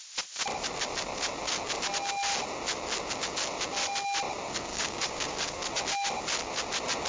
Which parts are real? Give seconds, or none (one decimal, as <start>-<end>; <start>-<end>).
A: 0.0-4.7; 5.4-7.1